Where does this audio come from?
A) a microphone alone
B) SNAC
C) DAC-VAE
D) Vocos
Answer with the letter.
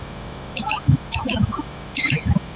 C